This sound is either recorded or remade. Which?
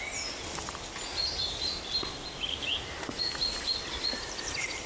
recorded